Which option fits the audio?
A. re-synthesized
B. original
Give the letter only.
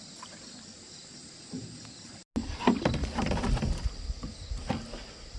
B